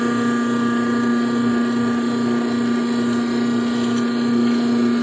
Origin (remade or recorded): recorded